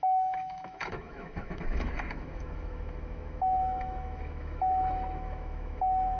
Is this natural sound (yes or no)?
no